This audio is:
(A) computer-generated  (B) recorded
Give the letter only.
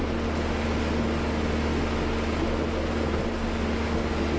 B